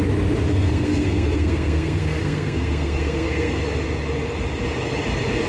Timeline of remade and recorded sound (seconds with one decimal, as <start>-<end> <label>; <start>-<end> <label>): 0.0-0.5 recorded; 0.5-3.5 remade; 3.5-5.5 recorded